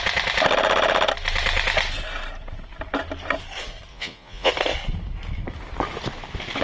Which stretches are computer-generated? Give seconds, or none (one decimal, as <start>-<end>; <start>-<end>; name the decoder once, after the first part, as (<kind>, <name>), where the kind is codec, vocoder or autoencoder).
3.9-4.5 (vocoder, Vocos)